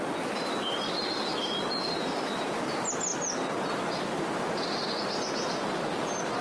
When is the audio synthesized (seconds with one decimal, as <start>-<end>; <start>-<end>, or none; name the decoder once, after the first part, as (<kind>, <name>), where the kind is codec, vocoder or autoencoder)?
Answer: none